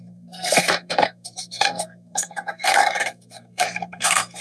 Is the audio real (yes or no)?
no